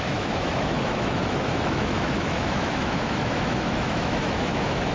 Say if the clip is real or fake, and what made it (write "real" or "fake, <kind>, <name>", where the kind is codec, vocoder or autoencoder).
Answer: fake, autoencoder, DAC-VAE